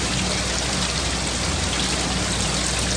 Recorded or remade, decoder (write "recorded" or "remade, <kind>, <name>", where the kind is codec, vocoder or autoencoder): recorded